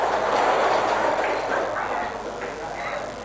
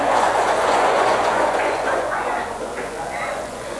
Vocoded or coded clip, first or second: second